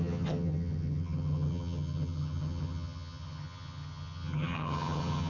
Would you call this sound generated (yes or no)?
yes